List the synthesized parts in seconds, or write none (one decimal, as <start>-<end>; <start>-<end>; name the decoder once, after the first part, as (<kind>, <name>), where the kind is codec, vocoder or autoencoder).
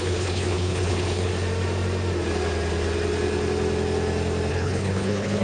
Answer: 0.0-1.3 (codec, HILCodec); 4.5-5.4